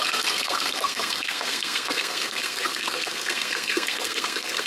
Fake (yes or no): yes